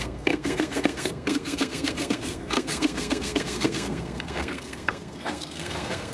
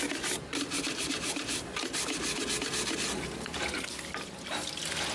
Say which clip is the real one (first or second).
second